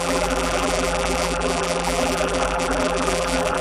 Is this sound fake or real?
fake